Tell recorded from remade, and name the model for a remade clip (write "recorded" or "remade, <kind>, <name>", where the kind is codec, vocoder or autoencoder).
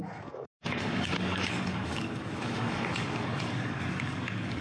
remade, codec, DAC